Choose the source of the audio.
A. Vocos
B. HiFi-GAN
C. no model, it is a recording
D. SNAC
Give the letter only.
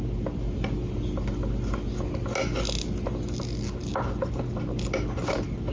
C